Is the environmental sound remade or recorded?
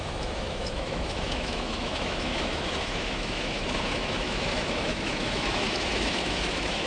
remade